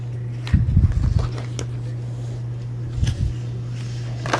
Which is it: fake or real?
real